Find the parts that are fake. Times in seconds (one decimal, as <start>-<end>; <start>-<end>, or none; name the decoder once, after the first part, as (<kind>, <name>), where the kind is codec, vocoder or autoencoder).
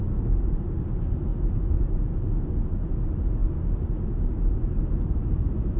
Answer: none